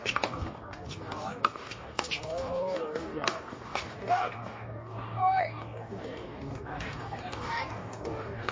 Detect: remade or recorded remade